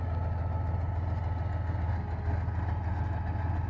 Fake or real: real